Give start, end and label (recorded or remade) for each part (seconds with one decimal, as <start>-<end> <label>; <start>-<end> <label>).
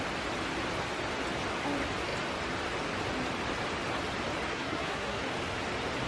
0.0-4.5 recorded; 4.5-5.2 remade; 5.2-6.1 recorded